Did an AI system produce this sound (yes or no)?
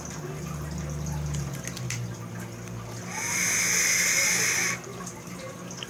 no